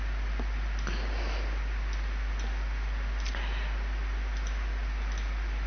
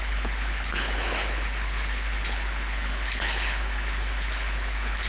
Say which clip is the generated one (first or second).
second